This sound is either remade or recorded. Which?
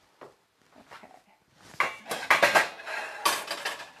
recorded